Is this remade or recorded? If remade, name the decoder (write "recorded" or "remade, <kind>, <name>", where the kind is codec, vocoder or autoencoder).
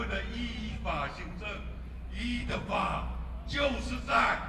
recorded